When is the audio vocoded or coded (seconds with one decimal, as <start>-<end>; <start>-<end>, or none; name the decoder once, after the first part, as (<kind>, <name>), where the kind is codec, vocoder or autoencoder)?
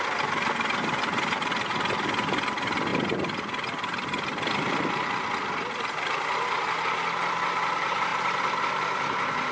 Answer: none